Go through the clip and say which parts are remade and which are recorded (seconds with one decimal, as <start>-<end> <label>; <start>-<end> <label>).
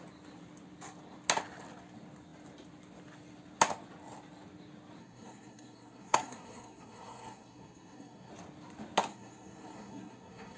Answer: 0.0-5.0 recorded; 5.0-8.3 remade; 8.3-9.1 recorded; 9.1-10.6 remade